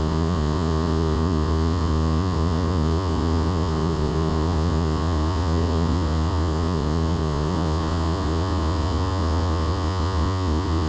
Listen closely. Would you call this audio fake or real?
fake